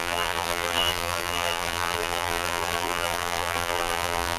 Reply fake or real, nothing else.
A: fake